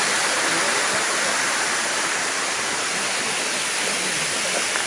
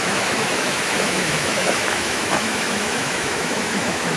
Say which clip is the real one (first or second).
first